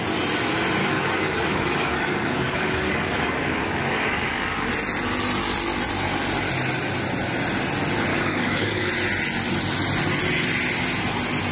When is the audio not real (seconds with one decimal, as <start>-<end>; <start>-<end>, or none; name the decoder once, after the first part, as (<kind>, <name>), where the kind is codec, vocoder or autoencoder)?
0.8-4.7 (codec, DAC); 8.1-8.9